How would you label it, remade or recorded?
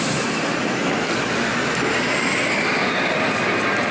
recorded